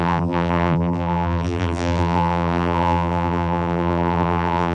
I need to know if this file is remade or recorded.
remade